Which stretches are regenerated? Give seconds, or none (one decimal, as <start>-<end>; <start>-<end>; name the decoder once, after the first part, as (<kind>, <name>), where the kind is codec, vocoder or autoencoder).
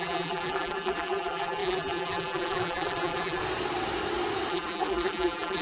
0.0-3.4 (vocoder, BigVGAN v2); 4.5-5.6